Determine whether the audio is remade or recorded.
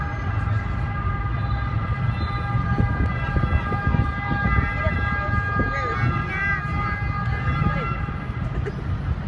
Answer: recorded